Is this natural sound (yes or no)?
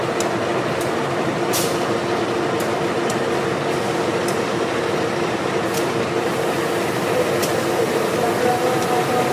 yes